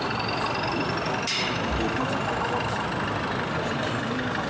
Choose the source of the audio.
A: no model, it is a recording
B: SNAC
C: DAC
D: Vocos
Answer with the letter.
A